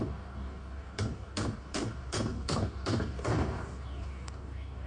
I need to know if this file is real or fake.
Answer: fake